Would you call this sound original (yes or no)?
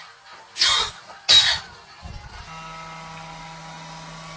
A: yes